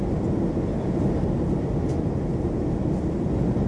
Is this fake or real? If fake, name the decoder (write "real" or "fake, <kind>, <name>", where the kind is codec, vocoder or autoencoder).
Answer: real